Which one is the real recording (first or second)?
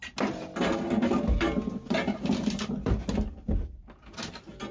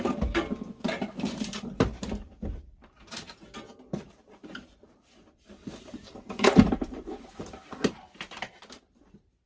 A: first